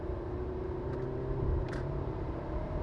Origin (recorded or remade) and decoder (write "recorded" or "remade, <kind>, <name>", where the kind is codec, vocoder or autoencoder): remade, vocoder, BigVGAN v2